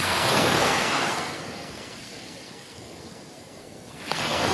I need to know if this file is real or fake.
fake